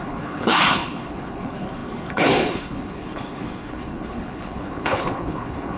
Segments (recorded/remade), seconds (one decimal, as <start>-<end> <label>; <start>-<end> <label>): 0.0-5.8 remade